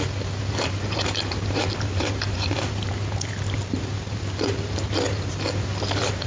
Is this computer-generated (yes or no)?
yes